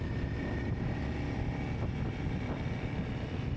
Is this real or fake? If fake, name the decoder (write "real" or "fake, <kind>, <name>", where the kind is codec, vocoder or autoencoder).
real